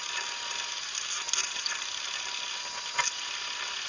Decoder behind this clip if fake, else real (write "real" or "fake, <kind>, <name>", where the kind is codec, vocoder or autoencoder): real